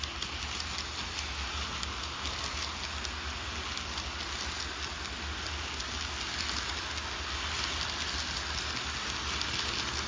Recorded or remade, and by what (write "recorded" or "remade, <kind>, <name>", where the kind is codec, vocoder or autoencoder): recorded